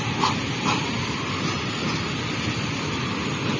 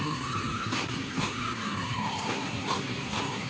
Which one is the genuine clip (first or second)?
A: first